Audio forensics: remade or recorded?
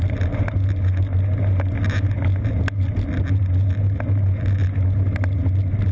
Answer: recorded